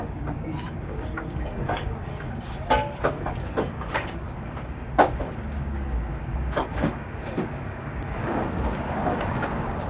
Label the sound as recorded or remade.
remade